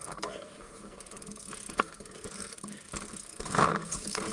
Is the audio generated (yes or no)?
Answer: yes